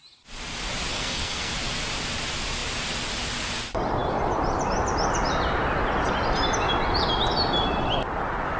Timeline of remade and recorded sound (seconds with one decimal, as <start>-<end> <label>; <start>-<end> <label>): 0.0-0.9 recorded; 0.9-1.5 remade; 1.5-8.6 recorded